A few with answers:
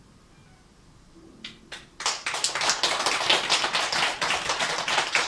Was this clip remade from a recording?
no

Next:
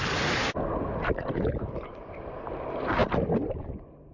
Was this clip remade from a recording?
no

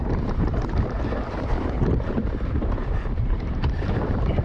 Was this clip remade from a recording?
yes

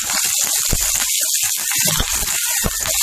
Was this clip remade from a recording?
no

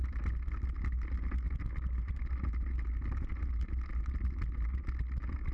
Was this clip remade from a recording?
no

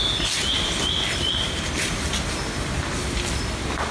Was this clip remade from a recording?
no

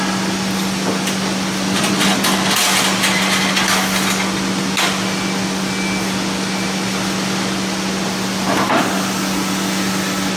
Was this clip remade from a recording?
no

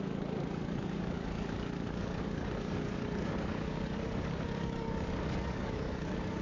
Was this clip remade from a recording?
yes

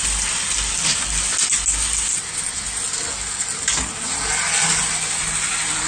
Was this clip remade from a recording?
no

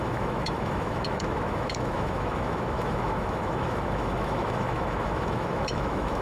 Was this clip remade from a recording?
yes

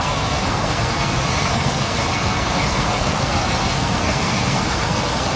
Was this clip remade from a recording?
yes